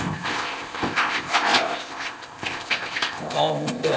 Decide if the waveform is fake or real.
fake